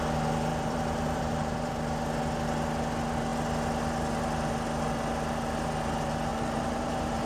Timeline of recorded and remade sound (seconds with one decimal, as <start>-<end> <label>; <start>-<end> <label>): 0.0-0.5 recorded; 0.5-1.7 remade; 1.7-6.3 recorded; 6.3-7.3 remade